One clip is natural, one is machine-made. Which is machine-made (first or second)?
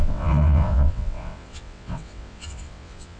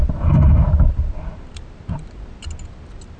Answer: first